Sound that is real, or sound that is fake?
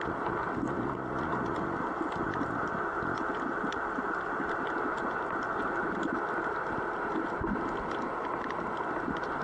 real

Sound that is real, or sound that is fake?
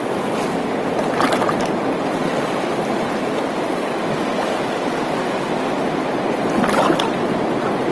fake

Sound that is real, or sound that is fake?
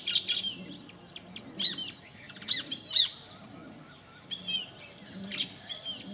real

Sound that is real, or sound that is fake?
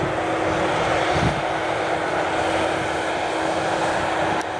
real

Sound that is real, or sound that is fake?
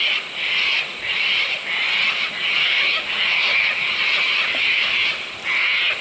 real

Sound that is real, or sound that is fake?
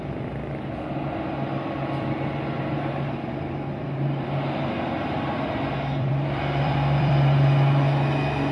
fake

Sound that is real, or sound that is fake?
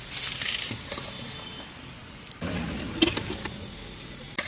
real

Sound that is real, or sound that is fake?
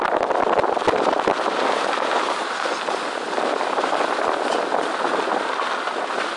real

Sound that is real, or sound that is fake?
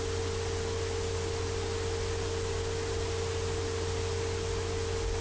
real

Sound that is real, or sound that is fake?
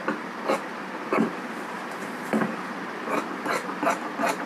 real